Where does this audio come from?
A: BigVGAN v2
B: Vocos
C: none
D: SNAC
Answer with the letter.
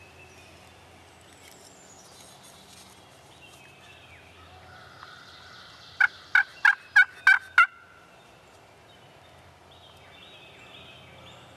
C